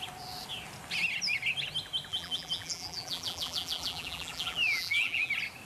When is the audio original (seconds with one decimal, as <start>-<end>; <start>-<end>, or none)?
0.0-2.1; 5.3-5.7